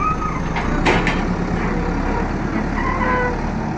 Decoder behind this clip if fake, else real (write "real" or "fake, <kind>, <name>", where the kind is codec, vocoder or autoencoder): real